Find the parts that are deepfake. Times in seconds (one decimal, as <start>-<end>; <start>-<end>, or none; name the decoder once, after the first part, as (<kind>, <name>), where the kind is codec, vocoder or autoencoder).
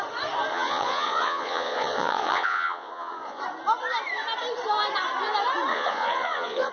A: 0.5-3.4 (vocoder, Vocos); 5.7-6.7